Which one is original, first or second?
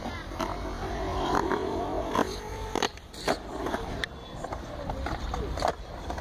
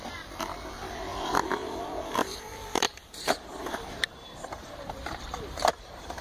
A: first